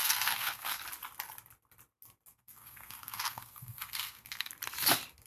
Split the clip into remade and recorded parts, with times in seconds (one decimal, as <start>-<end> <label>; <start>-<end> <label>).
0.0-0.8 remade; 0.8-2.3 recorded; 2.3-4.5 remade; 4.5-5.3 recorded